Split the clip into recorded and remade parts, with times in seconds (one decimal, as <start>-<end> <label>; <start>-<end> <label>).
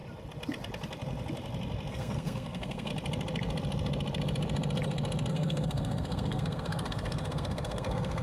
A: 0.0-1.9 recorded; 1.9-2.9 remade; 2.9-5.3 recorded; 5.3-8.2 remade